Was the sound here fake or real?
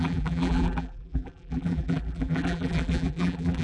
fake